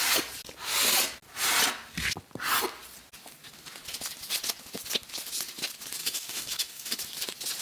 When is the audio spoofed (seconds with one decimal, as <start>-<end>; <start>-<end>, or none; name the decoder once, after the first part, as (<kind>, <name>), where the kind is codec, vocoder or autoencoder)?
6.0-7.0 (codec, DAC)